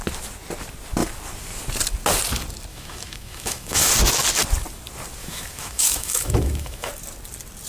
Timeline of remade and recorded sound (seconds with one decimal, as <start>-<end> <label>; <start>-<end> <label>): 0.0-2.7 recorded; 2.7-3.9 remade; 3.9-5.2 recorded; 5.2-6.9 remade; 6.9-7.7 recorded